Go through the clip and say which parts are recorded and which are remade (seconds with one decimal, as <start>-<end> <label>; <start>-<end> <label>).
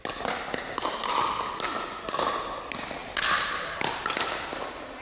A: 0.0-3.0 recorded; 3.0-5.0 remade